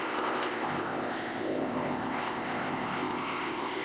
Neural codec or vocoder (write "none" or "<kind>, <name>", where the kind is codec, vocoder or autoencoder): codec, ZipCodec